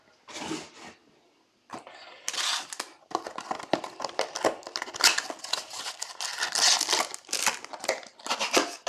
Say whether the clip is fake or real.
real